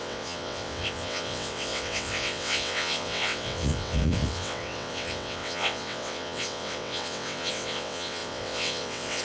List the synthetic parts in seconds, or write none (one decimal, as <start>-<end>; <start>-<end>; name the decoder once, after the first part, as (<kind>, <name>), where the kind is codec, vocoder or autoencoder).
0.0-9.2 (vocoder, WaveNeXt)